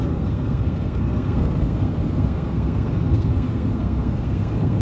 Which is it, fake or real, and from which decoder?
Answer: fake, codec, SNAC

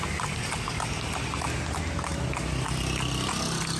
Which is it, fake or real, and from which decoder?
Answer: real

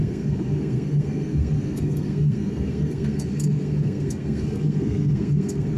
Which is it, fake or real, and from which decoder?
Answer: fake, codec, SNAC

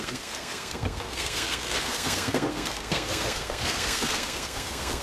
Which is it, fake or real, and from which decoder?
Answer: fake, codec, SNAC